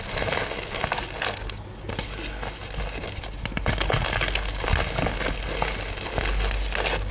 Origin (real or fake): real